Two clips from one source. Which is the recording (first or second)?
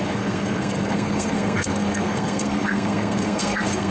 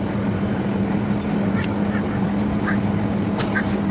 second